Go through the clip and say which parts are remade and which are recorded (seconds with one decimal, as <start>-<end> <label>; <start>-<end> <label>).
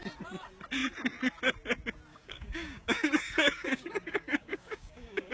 0.0-2.1 recorded; 2.1-5.3 remade